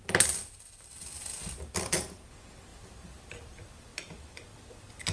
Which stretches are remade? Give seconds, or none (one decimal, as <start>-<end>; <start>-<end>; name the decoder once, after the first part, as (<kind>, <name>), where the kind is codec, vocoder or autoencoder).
2.7-3.2 (vocoder, BigVGAN v2)